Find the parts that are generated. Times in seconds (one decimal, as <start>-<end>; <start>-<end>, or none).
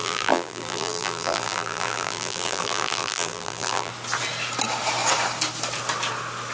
0.0-3.9